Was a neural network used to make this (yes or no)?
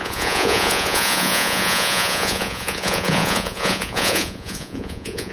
yes